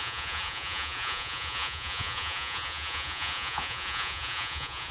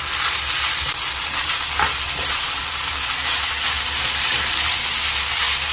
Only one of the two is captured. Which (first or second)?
second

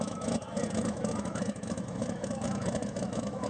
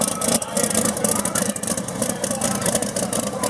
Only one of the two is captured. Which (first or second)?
second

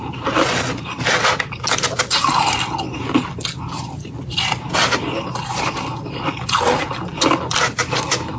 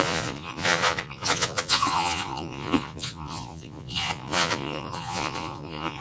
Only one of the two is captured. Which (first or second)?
first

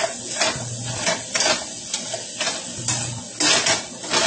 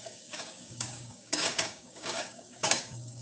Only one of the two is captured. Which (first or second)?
first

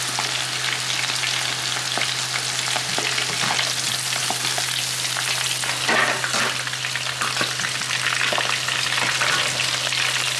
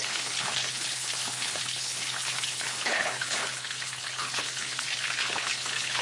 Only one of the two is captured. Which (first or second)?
first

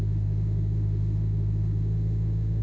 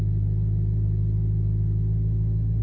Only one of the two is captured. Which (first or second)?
second